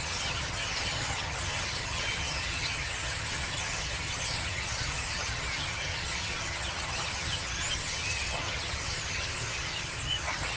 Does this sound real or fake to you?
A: fake